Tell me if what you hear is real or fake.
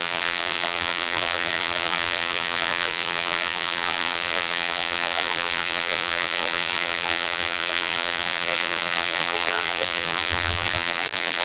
fake